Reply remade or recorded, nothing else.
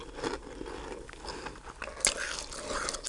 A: recorded